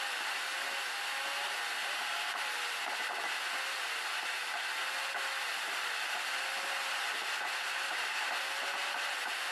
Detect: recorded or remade recorded